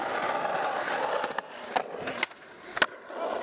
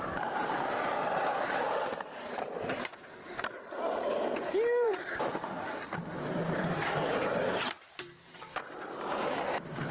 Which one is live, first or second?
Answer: first